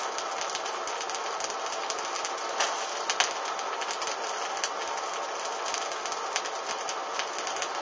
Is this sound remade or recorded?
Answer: recorded